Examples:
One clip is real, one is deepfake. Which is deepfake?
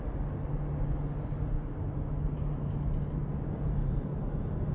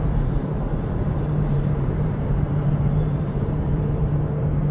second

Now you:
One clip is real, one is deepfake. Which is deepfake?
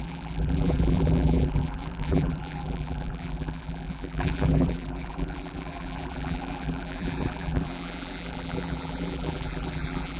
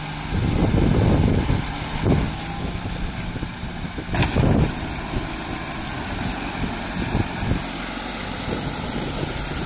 first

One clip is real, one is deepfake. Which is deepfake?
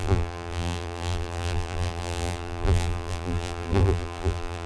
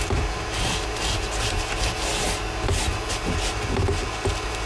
first